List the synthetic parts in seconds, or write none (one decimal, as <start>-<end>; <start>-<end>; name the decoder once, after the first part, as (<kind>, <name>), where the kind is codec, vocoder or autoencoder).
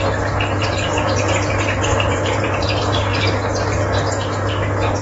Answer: 1.9-2.7 (vocoder, BigVGAN v2)